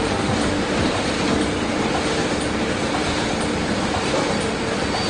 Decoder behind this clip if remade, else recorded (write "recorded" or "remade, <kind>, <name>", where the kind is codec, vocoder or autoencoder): recorded